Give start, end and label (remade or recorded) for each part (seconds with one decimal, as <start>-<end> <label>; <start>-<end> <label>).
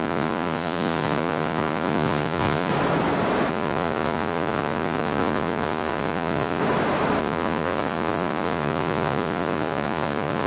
0.0-2.7 remade; 2.7-3.5 recorded; 3.5-6.6 remade; 6.6-7.2 recorded; 7.2-10.5 remade